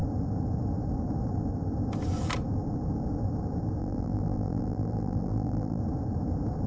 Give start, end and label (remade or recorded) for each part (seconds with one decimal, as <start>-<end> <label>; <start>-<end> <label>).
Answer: 0.0-3.8 recorded; 3.8-5.8 remade; 5.8-6.7 recorded